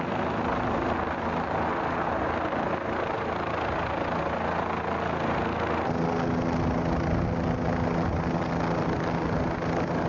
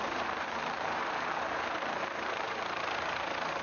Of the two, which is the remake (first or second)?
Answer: second